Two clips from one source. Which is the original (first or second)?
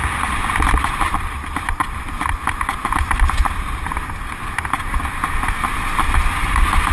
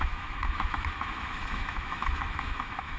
first